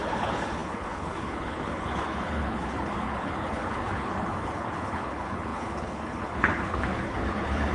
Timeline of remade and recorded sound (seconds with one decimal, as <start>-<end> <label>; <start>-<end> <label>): 0.0-7.7 remade